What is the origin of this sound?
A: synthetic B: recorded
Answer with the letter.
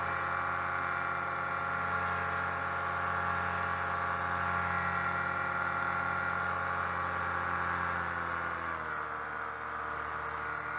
B